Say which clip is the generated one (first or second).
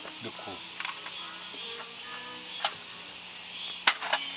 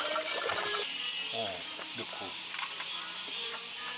second